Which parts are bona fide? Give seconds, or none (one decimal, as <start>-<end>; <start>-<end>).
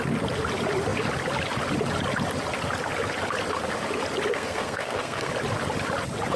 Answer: 0.0-4.3; 5.3-6.4